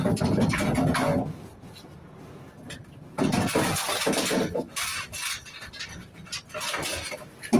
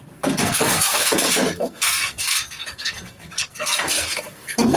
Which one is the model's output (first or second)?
second